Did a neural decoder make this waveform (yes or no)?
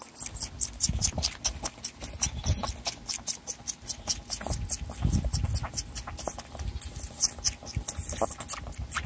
no